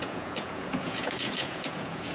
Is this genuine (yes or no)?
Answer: no